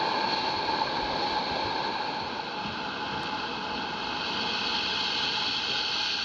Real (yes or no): yes